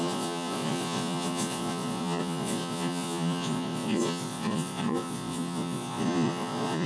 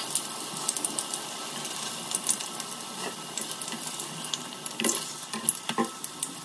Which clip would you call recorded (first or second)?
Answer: second